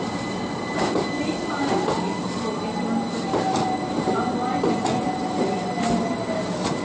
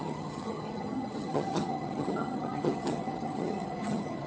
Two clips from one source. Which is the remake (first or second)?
second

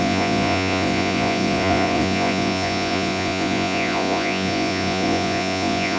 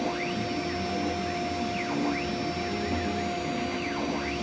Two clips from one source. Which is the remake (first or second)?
first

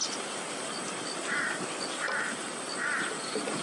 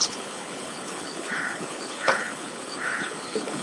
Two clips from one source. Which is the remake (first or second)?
second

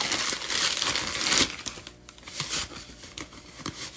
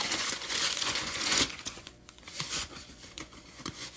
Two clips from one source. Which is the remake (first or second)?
second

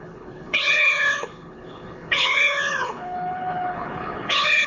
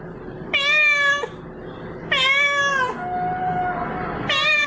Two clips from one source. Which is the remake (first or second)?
first